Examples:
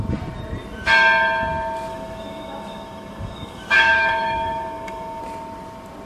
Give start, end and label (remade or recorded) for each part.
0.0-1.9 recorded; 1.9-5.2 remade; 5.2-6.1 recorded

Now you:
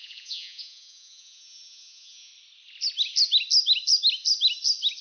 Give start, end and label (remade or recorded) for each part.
0.0-2.3 remade; 2.3-5.0 recorded

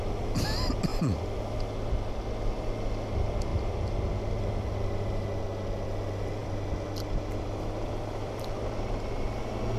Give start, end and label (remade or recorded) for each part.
0.0-6.4 recorded; 6.4-9.4 remade; 9.4-9.8 recorded

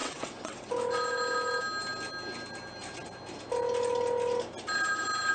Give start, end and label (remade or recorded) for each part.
0.0-0.7 remade; 0.7-5.3 recorded